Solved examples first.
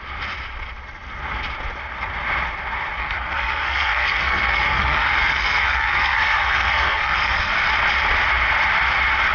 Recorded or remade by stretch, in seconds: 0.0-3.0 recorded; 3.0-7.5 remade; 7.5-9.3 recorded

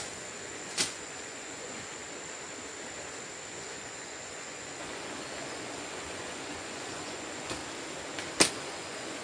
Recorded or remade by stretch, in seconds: 0.0-2.0 remade; 2.0-3.5 recorded; 3.5-7.6 remade; 7.6-8.5 recorded; 8.5-9.2 remade

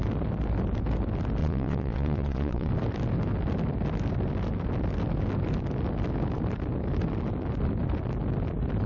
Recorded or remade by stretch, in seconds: 0.0-1.4 recorded; 1.4-2.7 remade; 2.7-8.9 recorded

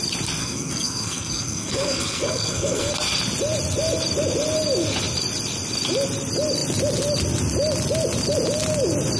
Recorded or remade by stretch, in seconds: 0.0-0.4 recorded; 0.4-2.9 remade; 2.9-9.2 recorded

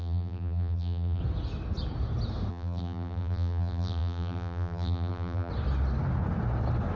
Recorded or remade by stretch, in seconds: 0.0-1.2 remade; 1.2-2.5 recorded; 2.5-5.5 remade; 5.5-7.0 recorded